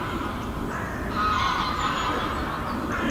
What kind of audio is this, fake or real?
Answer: real